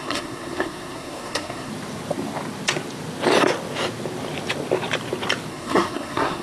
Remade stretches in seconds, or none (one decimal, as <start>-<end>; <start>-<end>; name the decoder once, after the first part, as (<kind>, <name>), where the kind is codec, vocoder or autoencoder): 0.0-1.7 (codec, SNAC); 5.5-6.4